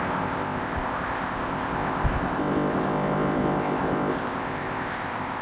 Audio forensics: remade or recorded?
remade